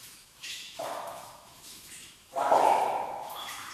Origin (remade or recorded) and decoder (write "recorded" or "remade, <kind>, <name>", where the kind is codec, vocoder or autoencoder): remade, autoencoder, DAC-VAE